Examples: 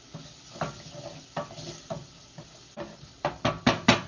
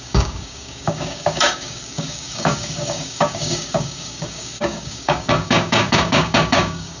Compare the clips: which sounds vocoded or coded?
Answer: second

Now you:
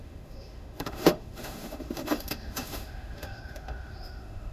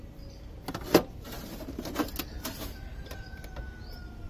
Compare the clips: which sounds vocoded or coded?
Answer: first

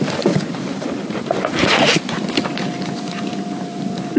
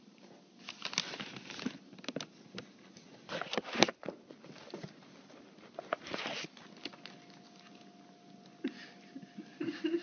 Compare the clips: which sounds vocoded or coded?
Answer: first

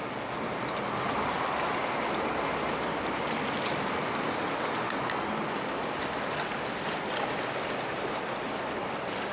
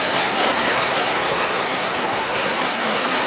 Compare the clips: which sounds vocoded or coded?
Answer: second